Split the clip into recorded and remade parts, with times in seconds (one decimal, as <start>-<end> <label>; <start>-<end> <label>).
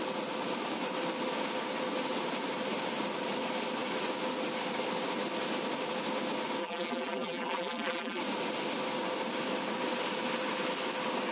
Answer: 0.0-6.6 recorded; 6.6-8.2 remade; 8.2-11.3 recorded